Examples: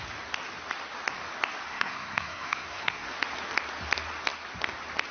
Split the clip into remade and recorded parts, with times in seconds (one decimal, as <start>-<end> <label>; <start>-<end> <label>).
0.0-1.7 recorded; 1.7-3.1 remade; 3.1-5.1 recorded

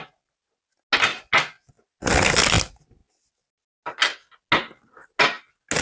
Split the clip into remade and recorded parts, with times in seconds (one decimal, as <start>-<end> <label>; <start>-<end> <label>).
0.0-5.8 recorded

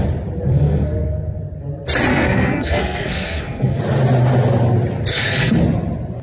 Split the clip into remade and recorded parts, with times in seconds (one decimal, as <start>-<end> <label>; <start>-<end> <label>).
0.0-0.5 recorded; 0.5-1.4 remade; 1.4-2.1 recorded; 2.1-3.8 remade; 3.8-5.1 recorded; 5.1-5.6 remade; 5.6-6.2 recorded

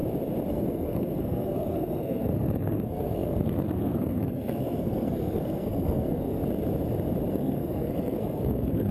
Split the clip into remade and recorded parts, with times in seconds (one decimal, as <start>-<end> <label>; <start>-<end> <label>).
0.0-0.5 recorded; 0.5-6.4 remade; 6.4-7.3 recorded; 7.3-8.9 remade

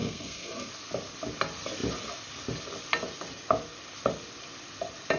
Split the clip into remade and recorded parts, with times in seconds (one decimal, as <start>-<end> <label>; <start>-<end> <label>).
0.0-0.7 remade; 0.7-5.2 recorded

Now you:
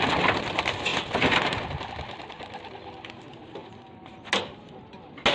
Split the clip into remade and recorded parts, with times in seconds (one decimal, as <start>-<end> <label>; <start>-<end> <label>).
0.0-5.3 recorded

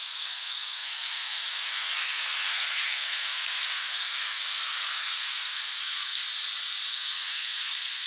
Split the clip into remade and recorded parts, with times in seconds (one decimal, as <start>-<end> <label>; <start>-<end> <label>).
0.0-6.2 remade; 6.2-6.9 recorded; 6.9-8.1 remade

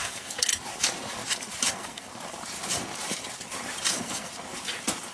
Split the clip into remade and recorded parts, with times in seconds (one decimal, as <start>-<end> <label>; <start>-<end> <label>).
0.0-0.5 remade; 0.5-1.7 recorded; 1.7-2.1 remade; 2.1-3.9 recorded; 3.9-4.3 remade; 4.3-5.1 recorded